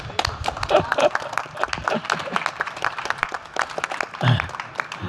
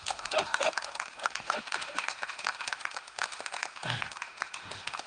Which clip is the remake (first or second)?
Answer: second